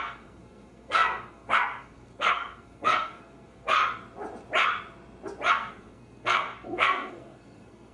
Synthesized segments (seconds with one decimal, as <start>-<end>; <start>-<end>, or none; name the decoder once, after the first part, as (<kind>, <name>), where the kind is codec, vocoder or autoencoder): 0.0-3.8 (codec, SNAC); 5.5-7.9